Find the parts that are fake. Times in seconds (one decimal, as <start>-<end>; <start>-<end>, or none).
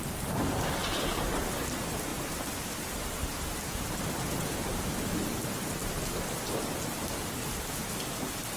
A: 2.1-5.0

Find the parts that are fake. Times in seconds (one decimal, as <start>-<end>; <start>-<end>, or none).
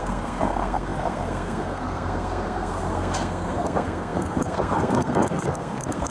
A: 0.0-6.1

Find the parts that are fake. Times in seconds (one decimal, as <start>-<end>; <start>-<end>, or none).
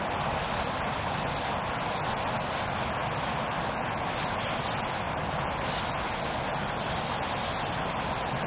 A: none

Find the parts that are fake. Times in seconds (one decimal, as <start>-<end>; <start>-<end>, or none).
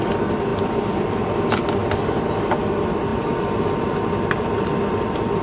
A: 0.5-1.2